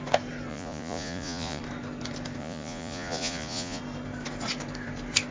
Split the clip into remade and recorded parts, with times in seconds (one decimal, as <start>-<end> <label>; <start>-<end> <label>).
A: 0.0-0.5 recorded; 0.5-1.6 remade; 1.6-2.4 recorded; 2.4-3.8 remade; 3.8-5.3 recorded